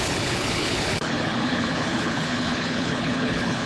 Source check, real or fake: fake